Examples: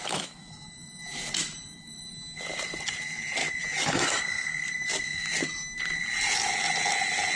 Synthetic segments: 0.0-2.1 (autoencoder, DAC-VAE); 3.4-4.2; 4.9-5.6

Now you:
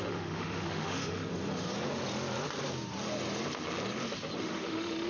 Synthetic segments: 0.0-1.3 (autoencoder, DAC-VAE); 4.4-5.1

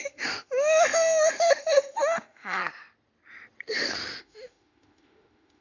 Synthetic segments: 0.0-2.6 (autoencoder, DAC-VAE); 4.2-5.6